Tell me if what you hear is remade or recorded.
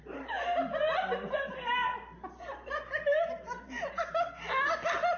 recorded